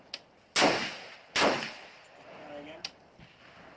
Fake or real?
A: real